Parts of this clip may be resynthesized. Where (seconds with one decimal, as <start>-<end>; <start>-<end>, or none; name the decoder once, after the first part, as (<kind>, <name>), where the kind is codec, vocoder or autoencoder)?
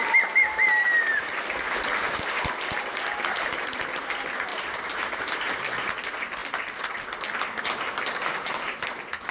4.5-5.6 (vocoder, BigVGAN v2)